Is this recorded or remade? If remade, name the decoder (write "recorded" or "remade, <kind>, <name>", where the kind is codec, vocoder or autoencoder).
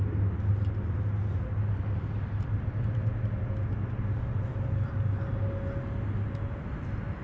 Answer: recorded